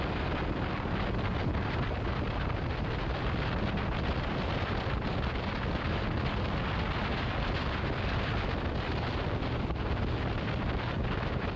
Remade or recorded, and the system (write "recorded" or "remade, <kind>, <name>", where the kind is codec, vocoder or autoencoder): recorded